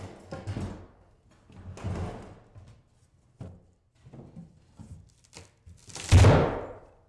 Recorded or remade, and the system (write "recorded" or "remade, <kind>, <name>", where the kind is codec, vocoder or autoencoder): recorded